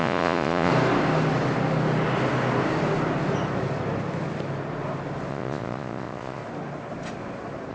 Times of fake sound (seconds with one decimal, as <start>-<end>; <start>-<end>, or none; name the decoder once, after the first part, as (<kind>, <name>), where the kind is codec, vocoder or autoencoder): 0.0-0.7 (vocoder, Vocos); 5.3-6.4